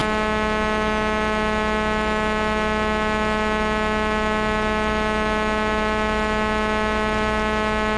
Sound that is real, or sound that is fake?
real